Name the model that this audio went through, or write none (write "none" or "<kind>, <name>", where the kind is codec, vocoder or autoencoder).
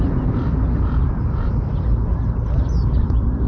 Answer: none